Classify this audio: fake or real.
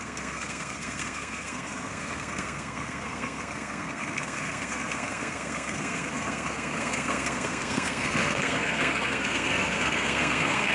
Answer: fake